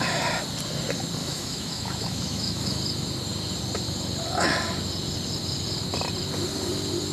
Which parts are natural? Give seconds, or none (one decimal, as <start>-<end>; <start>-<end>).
0.0-1.2; 2.8-7.1